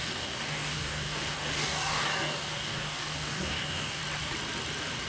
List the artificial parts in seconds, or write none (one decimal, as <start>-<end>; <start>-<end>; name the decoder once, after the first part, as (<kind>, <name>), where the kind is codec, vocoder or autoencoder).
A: 0.0-4.0 (codec, DAC)